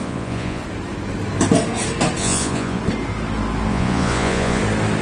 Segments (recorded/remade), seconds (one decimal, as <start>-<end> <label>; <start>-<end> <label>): 0.0-0.6 remade; 0.6-2.2 recorded; 2.2-2.8 remade; 2.8-3.7 recorded; 3.7-4.6 remade; 4.6-5.0 recorded